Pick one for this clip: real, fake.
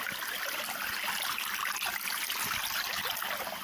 real